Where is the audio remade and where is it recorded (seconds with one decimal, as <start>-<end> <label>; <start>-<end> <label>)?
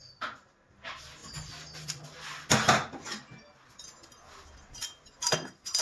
0.0-5.8 recorded